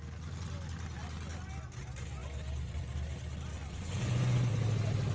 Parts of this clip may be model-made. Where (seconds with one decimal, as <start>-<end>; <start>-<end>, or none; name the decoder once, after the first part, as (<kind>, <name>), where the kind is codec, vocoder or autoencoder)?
3.5-4.5 (vocoder, Vocos)